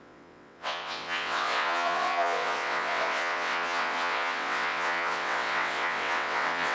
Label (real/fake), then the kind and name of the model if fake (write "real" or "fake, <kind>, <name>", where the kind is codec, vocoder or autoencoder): fake, vocoder, WaveNeXt